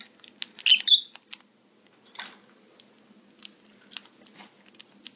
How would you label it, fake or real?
real